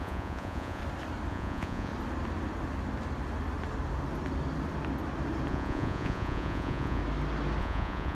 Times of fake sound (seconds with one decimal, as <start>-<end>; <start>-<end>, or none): 0.0-0.8; 1.3-1.9; 5.5-7.0; 7.6-8.1